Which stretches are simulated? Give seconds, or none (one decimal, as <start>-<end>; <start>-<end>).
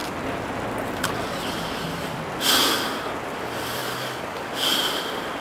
3.8-4.7